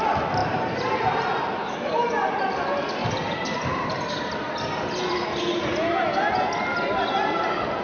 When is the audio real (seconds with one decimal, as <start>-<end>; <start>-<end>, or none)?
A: 0.0-0.4; 1.3-3.0; 6.0-7.8